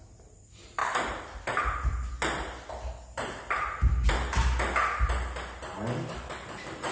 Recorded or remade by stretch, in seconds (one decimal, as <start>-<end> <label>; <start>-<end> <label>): 0.0-6.9 recorded